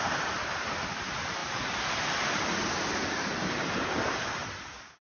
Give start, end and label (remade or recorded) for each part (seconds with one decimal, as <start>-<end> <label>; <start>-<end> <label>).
0.0-5.1 recorded